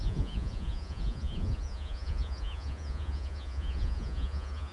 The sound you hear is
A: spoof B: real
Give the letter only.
A